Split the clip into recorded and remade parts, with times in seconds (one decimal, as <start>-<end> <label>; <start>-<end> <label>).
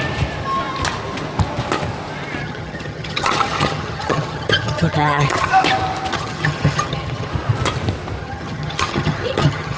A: 0.0-2.4 recorded; 2.4-5.5 remade; 5.5-6.1 recorded; 6.1-7.3 remade; 7.3-8.2 recorded; 8.2-9.8 remade